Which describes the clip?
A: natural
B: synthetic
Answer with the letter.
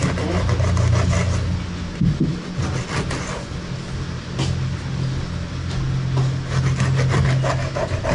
A